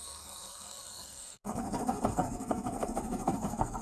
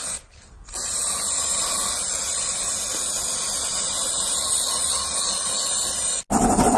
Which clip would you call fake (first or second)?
first